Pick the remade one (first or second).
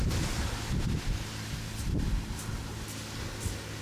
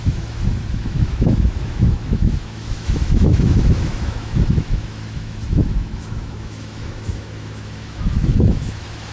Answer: second